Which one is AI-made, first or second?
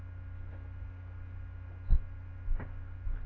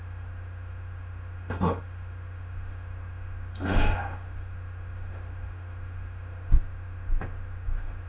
second